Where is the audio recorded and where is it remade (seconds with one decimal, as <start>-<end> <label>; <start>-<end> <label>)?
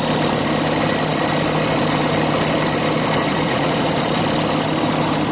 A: 0.0-3.3 recorded; 3.3-4.2 remade; 4.2-5.3 recorded